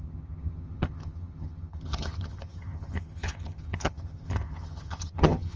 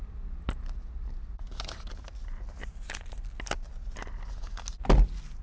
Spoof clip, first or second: first